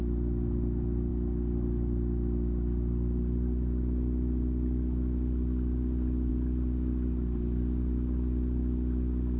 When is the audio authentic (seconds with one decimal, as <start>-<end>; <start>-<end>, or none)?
0.0-9.4